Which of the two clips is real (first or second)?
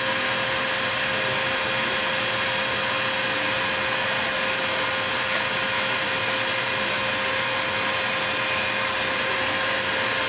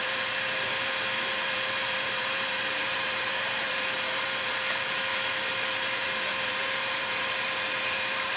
first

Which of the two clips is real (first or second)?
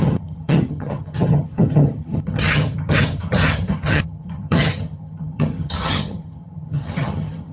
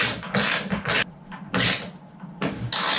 second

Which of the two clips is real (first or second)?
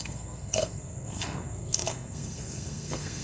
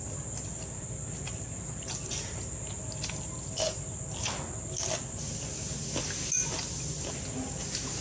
second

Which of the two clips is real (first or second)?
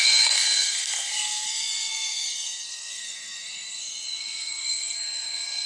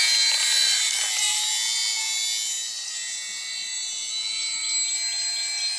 second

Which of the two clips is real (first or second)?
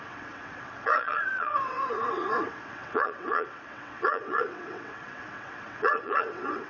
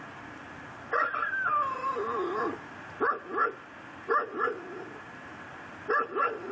second